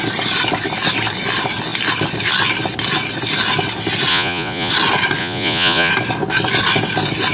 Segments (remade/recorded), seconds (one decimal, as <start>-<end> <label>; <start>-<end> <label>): 0.0-4.1 recorded; 4.1-4.7 remade; 4.7-5.2 recorded; 5.2-5.9 remade; 5.9-7.3 recorded